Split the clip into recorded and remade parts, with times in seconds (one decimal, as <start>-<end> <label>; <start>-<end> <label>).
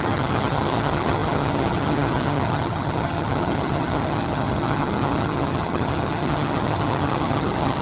0.0-7.8 remade